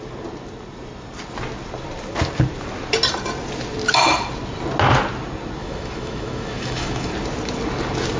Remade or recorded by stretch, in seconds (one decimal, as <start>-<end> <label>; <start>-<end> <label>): 0.0-5.6 recorded; 5.6-7.1 remade; 7.1-8.2 recorded